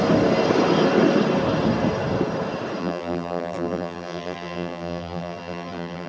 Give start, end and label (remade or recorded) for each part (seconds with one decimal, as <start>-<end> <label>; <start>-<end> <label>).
0.0-2.8 recorded; 2.8-6.1 remade